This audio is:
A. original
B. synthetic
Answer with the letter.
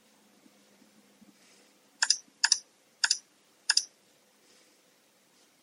B